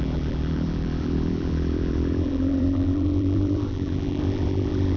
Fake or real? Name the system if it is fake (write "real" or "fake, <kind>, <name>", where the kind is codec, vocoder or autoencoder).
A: fake, vocoder, BigVGAN v2